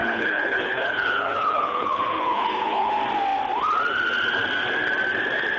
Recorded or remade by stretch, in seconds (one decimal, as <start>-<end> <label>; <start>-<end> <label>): 0.0-2.9 remade; 2.9-5.6 recorded